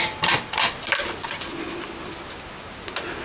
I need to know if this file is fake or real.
real